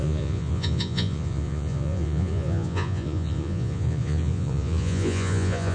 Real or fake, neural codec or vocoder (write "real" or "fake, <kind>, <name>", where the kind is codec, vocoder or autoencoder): fake, vocoder, Vocos